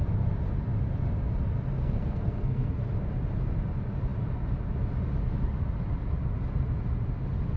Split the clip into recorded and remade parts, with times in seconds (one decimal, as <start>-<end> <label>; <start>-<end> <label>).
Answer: 0.0-1.8 recorded; 1.8-2.8 remade; 2.8-7.6 recorded